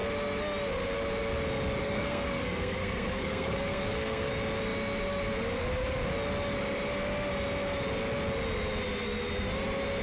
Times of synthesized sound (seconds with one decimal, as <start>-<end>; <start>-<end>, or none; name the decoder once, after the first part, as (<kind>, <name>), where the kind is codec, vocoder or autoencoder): 1.8-4.3 (codec, SNAC)